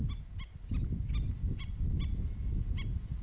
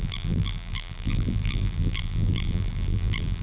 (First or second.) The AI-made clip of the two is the second